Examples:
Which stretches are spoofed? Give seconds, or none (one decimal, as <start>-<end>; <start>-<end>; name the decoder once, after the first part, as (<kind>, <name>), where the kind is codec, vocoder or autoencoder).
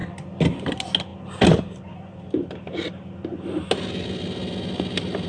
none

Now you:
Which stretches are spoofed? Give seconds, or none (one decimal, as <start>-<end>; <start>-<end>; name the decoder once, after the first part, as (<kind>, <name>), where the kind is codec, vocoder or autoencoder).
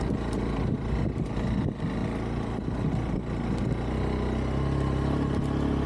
none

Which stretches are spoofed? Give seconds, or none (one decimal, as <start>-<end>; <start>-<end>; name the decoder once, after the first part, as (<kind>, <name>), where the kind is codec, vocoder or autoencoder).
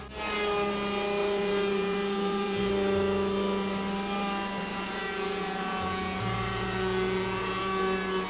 1.2-2.7 (vocoder, Vocos); 4.7-7.6